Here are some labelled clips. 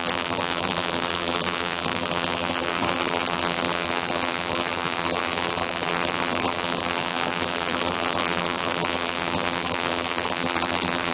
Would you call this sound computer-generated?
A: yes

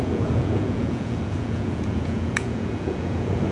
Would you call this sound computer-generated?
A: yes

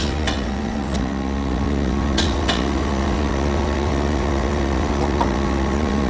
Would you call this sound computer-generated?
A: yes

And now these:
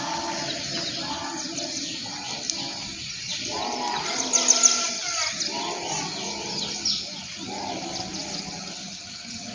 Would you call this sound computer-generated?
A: no